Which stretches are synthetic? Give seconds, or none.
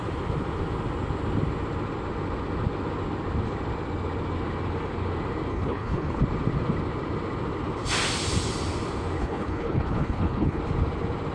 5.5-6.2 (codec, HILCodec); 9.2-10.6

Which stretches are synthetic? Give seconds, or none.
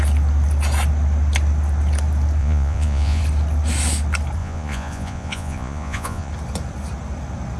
2.4-3.2 (vocoder, Vocos); 4.4-6.3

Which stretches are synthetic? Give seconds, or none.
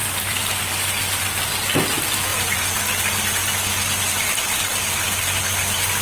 0.0-0.6 (vocoder, BigVGAN v2); 2.3-2.8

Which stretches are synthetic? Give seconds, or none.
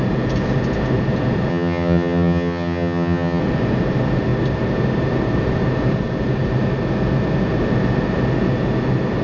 1.5-3.4 (vocoder, HiFi-GAN)